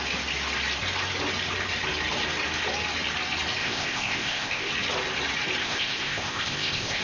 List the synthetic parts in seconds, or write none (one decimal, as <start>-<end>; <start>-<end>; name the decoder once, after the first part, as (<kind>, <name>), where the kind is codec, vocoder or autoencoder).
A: 3.6-4.7 (codec, ZipCodec); 5.6-7.0